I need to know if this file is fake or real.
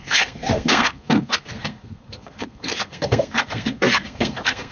fake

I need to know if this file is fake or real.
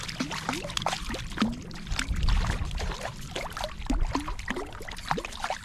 real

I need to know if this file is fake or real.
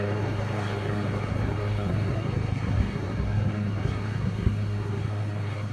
fake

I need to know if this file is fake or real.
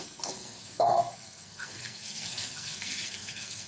fake